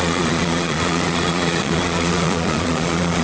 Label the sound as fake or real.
fake